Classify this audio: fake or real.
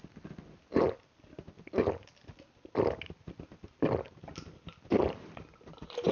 real